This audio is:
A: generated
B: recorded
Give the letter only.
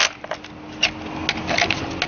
B